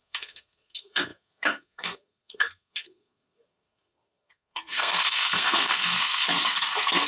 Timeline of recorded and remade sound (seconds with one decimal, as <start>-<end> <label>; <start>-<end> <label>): 0.0-7.1 remade